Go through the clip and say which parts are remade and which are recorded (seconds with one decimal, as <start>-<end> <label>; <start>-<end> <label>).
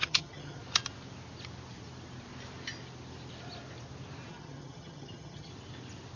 0.0-0.6 remade; 0.6-4.3 recorded; 4.3-5.5 remade; 5.5-6.2 recorded